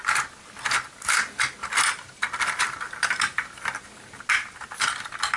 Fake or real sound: real